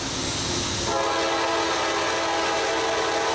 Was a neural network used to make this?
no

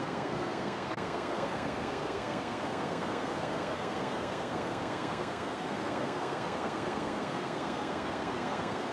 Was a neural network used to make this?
yes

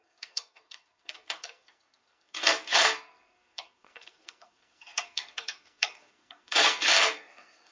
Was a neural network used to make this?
yes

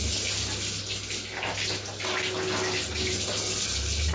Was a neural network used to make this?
no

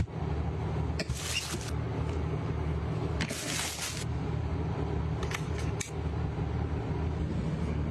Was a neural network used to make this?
no